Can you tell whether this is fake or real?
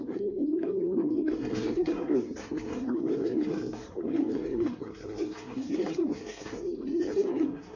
fake